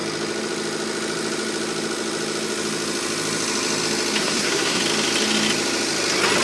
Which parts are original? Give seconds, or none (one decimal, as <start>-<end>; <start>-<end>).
0.0-4.2; 4.8-6.4